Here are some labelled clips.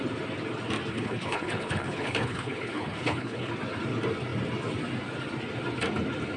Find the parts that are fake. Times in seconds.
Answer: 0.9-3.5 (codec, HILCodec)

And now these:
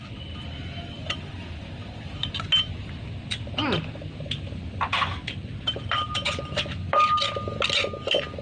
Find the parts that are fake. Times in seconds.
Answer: none

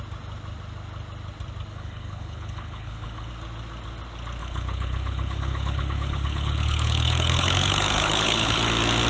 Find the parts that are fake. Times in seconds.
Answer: 1.7-3.3 (codec, HILCodec); 4.4-8.6

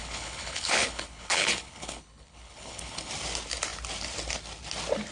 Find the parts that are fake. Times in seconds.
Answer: 0.0-3.1 (codec, HILCodec)

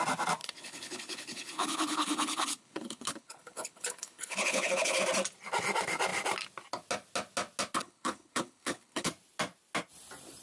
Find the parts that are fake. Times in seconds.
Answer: 0.4-5.0 (codec, HILCodec); 7.8-9.1

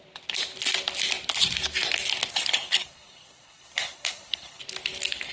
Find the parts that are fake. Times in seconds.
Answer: 2.3-4.6 (codec, HILCodec)

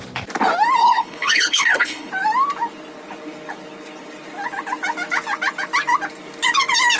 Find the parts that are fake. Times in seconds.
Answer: 0.8-2.1 (codec, HILCodec)